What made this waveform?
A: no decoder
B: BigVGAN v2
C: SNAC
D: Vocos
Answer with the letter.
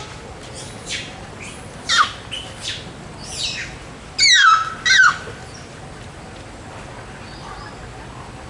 A